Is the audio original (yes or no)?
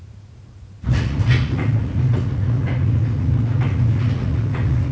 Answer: no